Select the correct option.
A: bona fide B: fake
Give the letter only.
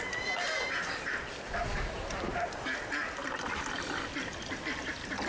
A